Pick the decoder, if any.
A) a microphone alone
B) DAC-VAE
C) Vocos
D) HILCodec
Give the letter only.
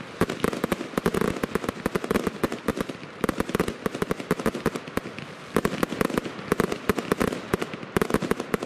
A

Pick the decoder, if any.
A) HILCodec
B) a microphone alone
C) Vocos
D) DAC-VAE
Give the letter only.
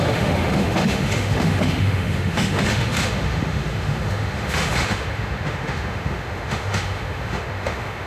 D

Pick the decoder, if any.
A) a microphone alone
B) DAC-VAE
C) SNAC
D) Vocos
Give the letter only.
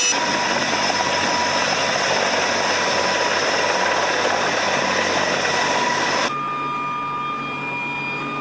A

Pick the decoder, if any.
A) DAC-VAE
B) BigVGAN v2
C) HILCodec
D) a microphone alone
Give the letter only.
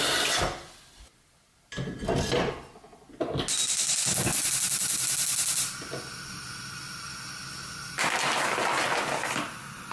D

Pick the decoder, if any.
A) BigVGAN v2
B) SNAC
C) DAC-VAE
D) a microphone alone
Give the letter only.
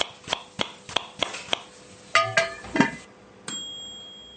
D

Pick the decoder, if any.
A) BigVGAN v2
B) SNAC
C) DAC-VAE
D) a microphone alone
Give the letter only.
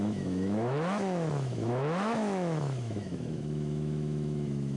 C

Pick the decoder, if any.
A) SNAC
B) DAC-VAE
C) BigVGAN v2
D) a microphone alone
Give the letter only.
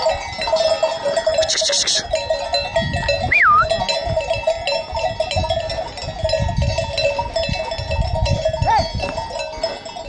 D